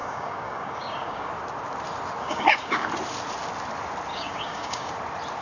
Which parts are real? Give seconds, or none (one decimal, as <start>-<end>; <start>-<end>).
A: 1.3-2.2; 2.9-4.1; 4.9-5.4